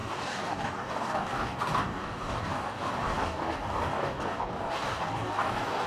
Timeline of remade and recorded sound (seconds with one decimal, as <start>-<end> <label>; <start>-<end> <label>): 0.0-5.9 remade